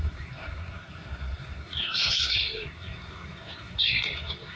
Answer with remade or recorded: remade